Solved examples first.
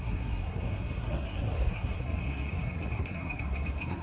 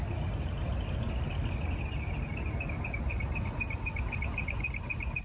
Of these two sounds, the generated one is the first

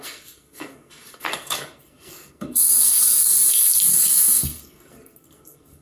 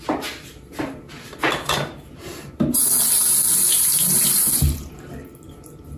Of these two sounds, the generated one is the first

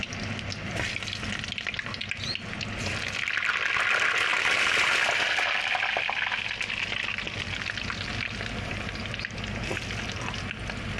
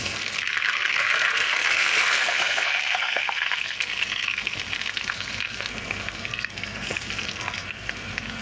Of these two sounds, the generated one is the second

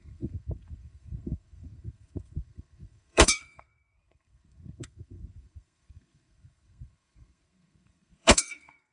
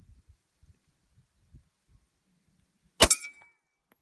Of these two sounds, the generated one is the first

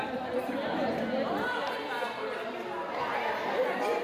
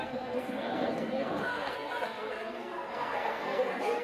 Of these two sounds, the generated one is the second